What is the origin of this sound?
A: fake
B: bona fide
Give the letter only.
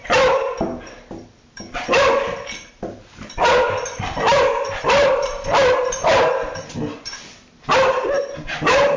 A